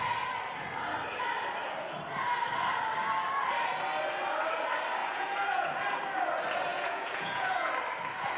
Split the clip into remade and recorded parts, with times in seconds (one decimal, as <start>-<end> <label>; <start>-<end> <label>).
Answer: 0.0-5.0 recorded; 5.0-5.7 remade; 5.7-6.7 recorded; 6.7-7.7 remade; 7.7-8.4 recorded